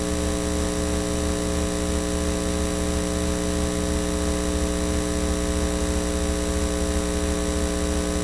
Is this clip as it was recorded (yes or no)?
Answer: yes